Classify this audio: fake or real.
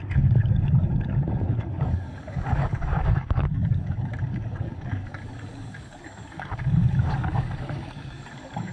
fake